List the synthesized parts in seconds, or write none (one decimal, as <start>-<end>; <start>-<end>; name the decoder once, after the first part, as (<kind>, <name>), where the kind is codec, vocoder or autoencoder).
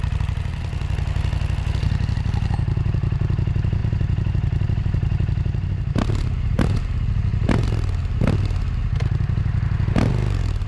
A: 3.8-6.8 (vocoder, BigVGAN v2)